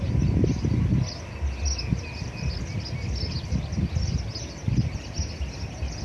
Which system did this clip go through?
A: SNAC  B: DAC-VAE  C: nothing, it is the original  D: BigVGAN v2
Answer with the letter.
C